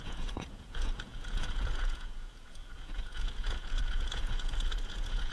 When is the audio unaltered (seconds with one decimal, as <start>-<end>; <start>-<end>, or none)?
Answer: none